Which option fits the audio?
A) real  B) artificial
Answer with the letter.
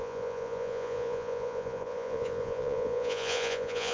B